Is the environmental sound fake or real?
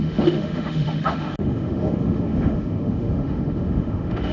fake